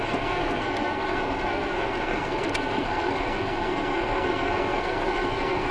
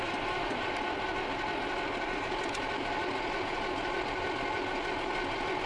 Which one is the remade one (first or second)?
first